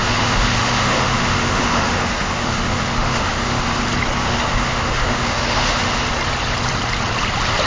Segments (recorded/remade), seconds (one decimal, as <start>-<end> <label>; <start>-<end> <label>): 0.0-3.8 remade; 3.8-4.2 recorded; 4.2-6.1 remade; 6.1-7.7 recorded

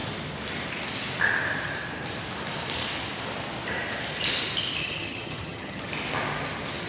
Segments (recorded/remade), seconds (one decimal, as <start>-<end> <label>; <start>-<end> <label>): 0.0-4.8 recorded; 4.8-5.9 remade; 5.9-6.9 recorded

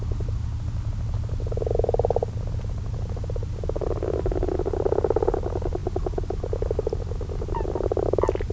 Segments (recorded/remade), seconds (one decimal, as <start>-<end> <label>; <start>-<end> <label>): 0.0-8.5 recorded